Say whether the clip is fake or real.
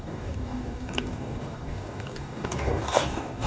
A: fake